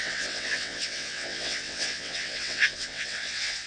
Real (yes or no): no